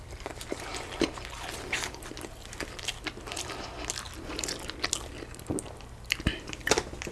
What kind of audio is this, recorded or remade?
recorded